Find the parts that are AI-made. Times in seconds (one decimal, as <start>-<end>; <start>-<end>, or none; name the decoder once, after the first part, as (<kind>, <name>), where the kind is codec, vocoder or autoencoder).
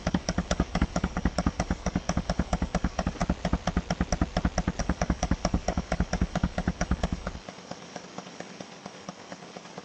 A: 0.0-3.2 (codec, DAC); 4.8-9.8